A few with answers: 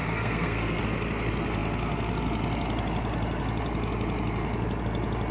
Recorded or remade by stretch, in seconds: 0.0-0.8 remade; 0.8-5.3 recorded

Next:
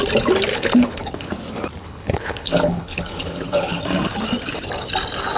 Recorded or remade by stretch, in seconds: 0.0-0.5 recorded; 0.5-1.3 remade; 1.3-1.8 recorded; 1.8-3.8 remade; 3.8-5.4 recorded

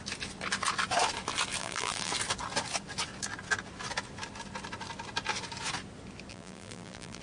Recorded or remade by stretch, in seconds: 0.0-1.6 recorded; 1.6-2.1 remade; 2.1-6.3 recorded; 6.3-7.2 remade

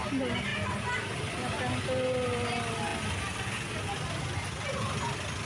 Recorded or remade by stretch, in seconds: 0.0-5.4 recorded

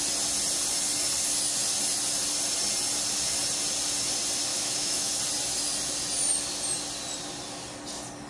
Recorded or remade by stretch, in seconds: 0.0-4.5 recorded; 4.5-5.2 remade; 5.2-8.3 recorded

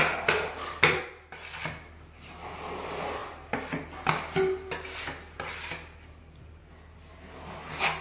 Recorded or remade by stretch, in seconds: 0.0-8.0 recorded

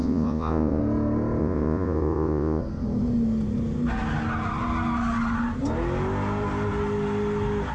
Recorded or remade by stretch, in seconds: 0.0-0.8 remade; 0.8-1.4 recorded; 1.4-2.6 remade; 2.6-7.7 recorded

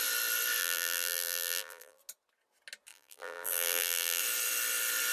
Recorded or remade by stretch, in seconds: 0.0-0.6 recorded; 0.6-2.0 remade; 2.0-2.9 recorded; 2.9-4.2 remade; 4.2-5.1 recorded